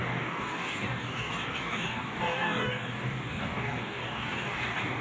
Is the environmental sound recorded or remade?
remade